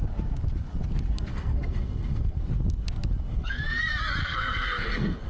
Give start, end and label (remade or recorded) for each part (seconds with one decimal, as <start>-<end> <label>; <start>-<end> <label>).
0.0-1.3 recorded; 1.3-2.4 remade; 2.4-3.3 recorded; 3.3-3.8 remade; 3.8-4.2 recorded; 4.2-5.3 remade